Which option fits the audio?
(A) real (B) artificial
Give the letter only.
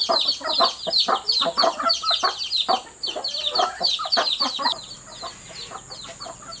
A